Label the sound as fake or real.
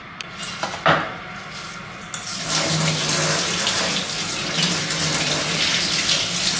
real